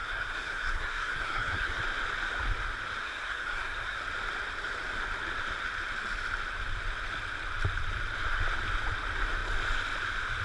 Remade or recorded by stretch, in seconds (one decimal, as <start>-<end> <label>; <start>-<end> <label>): 0.0-1.8 remade; 1.8-3.0 recorded; 3.0-4.0 remade; 4.0-10.4 recorded